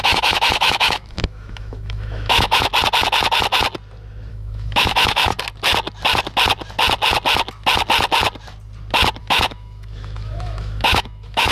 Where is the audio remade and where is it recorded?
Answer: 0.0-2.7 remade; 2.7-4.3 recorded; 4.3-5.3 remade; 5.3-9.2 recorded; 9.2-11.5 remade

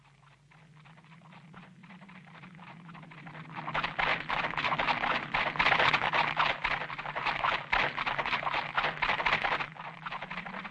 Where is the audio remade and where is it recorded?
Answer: 0.0-1.8 recorded; 1.8-3.0 remade; 3.0-10.7 recorded

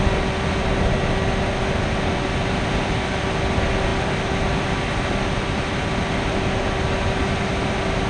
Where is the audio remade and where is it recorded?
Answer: 0.0-8.1 recorded

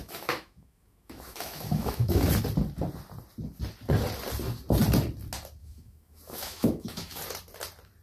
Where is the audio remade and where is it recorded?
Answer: 0.0-2.3 remade; 2.3-5.6 recorded; 5.6-7.2 remade; 7.2-8.0 recorded

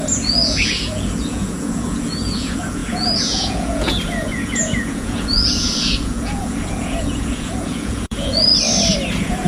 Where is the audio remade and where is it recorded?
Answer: 0.0-8.5 remade; 8.5-9.1 recorded; 9.1-9.5 remade